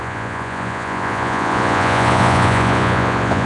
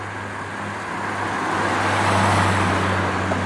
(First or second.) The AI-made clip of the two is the first